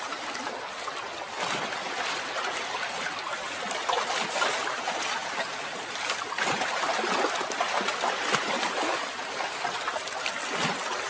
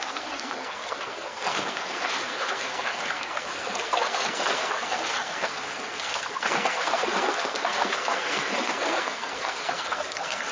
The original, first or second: first